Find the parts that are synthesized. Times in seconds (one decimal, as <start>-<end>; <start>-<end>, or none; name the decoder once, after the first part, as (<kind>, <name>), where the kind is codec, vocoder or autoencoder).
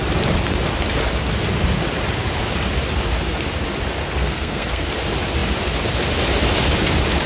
4.0-4.9 (codec, SNAC)